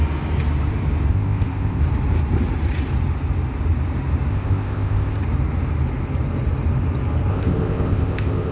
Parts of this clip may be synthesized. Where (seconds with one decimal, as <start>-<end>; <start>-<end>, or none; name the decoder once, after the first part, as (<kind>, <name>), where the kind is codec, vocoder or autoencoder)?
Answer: 1.1-1.8 (codec, ZipCodec); 4.3-5.2; 7.3-8.5